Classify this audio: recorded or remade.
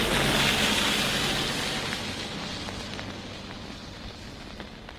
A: recorded